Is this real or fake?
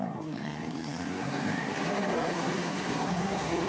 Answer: fake